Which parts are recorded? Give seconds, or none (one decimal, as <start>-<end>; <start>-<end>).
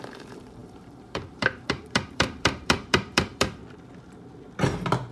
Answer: 3.6-5.1